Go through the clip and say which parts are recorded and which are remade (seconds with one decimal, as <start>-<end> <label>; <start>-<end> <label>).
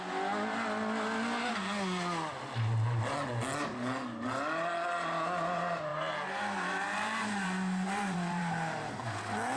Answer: 0.0-5.9 recorded; 5.9-8.9 remade; 8.9-9.6 recorded